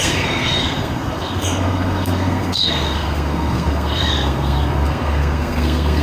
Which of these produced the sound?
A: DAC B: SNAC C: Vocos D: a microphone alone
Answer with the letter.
B